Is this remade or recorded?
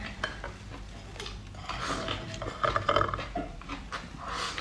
recorded